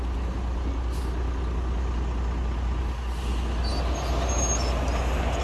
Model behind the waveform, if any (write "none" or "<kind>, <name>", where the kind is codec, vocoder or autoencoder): none